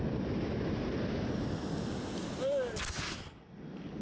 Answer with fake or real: real